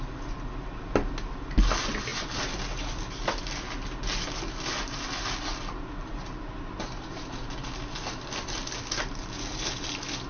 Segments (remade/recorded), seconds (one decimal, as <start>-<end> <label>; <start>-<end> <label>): 0.0-10.3 recorded